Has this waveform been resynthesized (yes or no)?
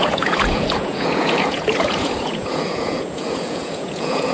yes